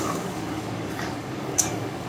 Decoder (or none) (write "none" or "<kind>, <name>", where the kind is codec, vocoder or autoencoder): codec, DAC